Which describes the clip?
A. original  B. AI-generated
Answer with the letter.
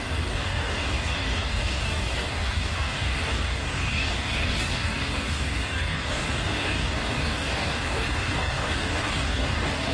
B